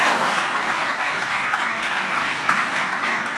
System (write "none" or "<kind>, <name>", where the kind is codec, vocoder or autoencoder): codec, DAC